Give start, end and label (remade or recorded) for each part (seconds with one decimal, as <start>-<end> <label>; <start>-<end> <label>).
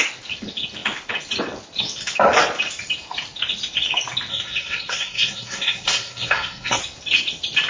0.0-4.3 recorded; 4.3-6.8 remade; 6.8-7.7 recorded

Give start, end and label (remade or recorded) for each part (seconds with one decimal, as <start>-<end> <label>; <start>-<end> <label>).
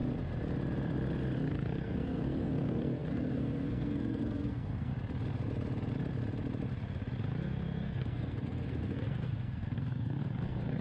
0.0-1.5 recorded; 1.5-4.9 remade; 4.9-7.4 recorded; 7.4-10.8 remade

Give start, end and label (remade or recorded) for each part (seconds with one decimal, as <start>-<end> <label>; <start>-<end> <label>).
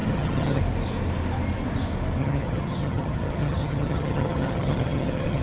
0.0-0.6 remade; 0.6-2.2 recorded; 2.2-5.4 remade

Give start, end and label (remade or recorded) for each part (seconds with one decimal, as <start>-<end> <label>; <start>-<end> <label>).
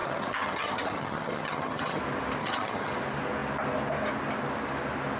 0.0-2.0 remade; 2.0-2.4 recorded; 2.4-2.9 remade; 2.9-5.2 recorded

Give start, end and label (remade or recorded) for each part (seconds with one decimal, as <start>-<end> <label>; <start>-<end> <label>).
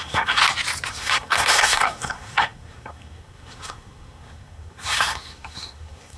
0.0-0.4 remade; 0.4-0.9 recorded; 0.9-6.2 remade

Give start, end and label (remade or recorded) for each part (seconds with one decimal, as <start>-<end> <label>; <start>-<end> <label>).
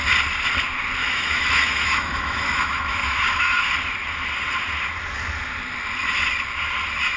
0.0-1.0 recorded; 1.0-3.7 remade; 3.7-7.2 recorded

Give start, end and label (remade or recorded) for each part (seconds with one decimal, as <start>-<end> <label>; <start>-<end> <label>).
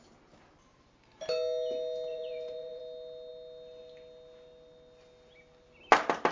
0.0-2.1 recorded; 2.1-2.8 remade; 2.8-6.3 recorded